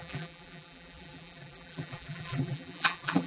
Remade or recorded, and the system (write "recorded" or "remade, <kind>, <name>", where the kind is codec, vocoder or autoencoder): remade, vocoder, BigVGAN v2